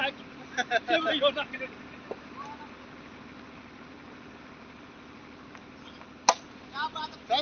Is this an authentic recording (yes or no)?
yes